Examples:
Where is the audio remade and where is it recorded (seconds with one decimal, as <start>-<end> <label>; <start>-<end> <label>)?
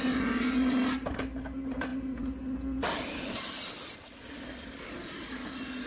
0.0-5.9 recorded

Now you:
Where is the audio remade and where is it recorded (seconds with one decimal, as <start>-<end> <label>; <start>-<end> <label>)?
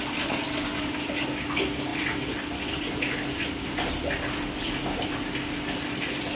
0.0-6.4 recorded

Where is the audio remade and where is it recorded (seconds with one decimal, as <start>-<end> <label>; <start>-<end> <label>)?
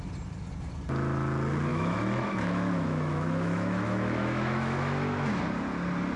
0.0-1.7 recorded; 1.7-5.4 remade; 5.4-6.2 recorded